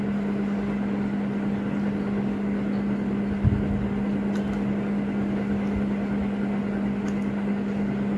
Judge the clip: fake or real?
real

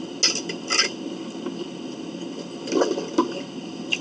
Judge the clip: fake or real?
real